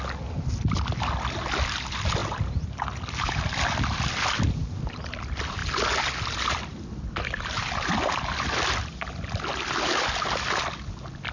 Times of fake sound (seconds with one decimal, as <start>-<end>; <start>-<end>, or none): none